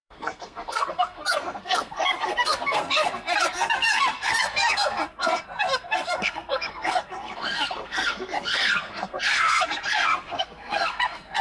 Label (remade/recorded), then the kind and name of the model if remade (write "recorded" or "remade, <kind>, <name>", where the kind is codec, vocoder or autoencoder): remade, codec, SNAC